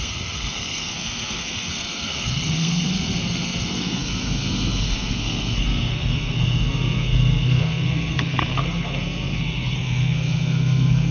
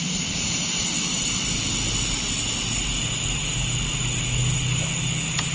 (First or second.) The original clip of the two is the second